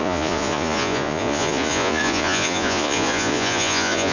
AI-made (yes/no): yes